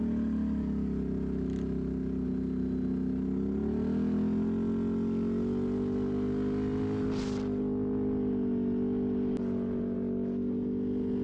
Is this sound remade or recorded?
recorded